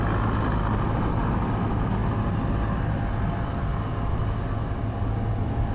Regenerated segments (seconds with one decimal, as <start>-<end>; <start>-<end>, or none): none